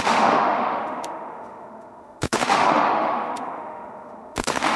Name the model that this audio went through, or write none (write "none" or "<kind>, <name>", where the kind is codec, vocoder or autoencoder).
autoencoder, DAC-VAE